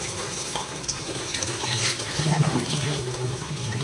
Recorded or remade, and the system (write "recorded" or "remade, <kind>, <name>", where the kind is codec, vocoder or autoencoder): remade, codec, SNAC